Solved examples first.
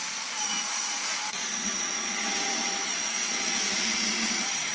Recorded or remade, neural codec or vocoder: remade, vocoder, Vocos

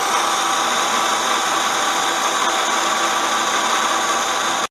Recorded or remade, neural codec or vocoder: recorded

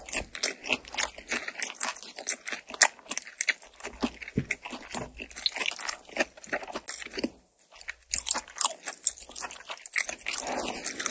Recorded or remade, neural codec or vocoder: recorded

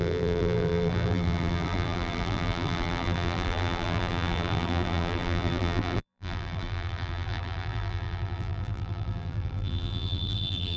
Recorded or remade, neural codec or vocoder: remade, vocoder, BigVGAN v2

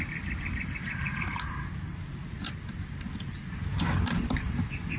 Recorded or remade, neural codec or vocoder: recorded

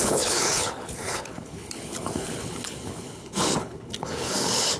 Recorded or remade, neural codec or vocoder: remade, codec, HILCodec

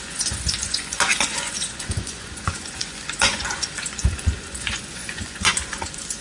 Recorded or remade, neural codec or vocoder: remade, vocoder, Vocos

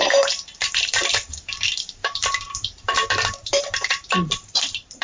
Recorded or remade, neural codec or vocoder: remade, vocoder, BigVGAN v2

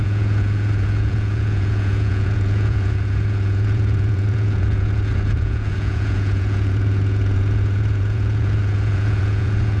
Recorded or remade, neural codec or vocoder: remade, vocoder, Vocos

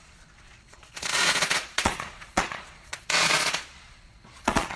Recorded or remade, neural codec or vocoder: remade, vocoder, Vocos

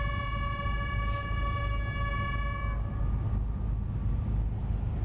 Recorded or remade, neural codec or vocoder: recorded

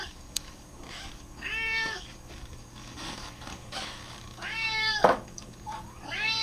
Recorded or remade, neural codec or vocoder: remade, codec, DAC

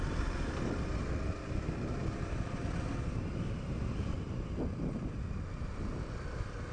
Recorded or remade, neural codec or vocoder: recorded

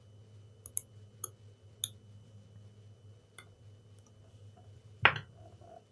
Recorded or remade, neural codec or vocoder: recorded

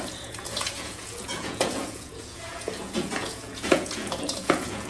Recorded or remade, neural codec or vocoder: remade, vocoder, Vocos